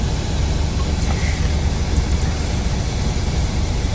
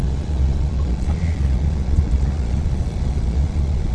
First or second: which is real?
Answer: first